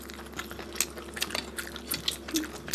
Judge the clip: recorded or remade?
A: recorded